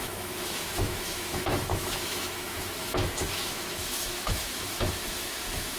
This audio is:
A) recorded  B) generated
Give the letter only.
B